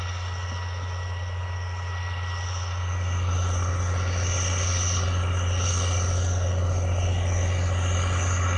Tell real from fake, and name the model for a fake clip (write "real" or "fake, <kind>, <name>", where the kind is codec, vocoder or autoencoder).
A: real